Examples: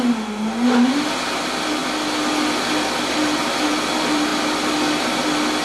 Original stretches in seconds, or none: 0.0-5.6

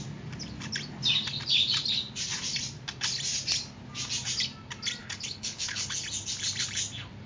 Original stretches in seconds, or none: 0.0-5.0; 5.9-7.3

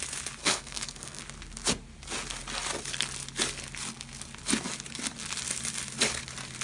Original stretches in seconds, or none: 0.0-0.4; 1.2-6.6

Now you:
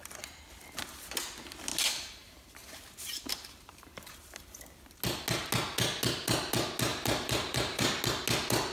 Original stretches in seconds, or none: 0.0-1.7; 5.0-6.9; 8.0-8.7

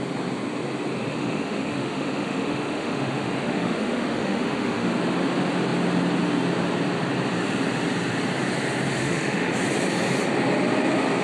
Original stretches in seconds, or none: 0.0-1.1; 4.9-9.0; 9.5-11.2